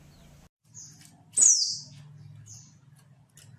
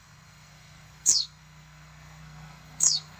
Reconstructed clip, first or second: second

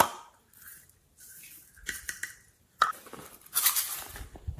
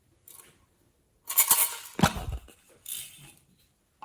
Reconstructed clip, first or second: first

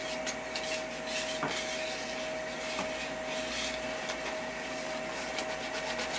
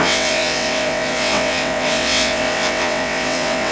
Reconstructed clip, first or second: second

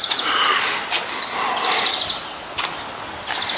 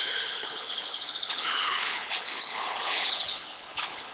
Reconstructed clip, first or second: second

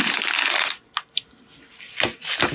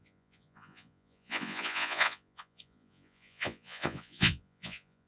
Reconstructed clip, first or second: second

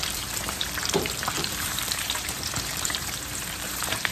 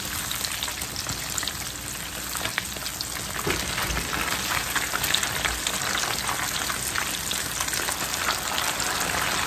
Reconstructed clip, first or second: first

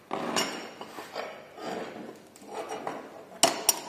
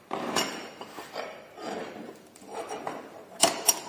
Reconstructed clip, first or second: second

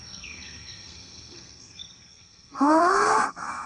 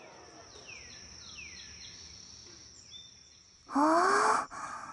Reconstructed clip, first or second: first